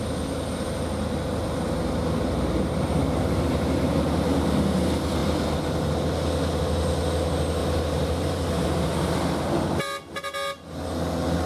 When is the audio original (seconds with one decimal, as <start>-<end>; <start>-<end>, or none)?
0.0-7.6; 8.9-11.5

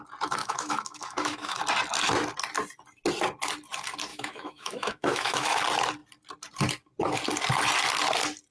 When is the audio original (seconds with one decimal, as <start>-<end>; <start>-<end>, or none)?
0.0-0.4; 1.6-4.1; 5.6-8.5

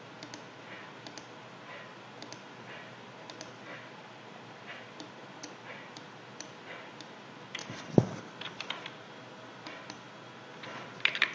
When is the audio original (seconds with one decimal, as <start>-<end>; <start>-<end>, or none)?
0.0-11.3

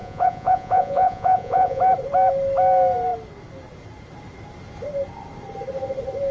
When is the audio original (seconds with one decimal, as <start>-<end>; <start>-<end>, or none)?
1.8-6.3

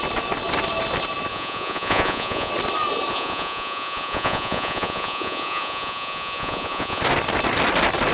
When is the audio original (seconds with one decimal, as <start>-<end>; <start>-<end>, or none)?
0.0-1.3; 2.5-3.1; 7.0-8.1

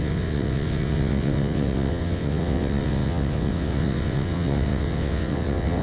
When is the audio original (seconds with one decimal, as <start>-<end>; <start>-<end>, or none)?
none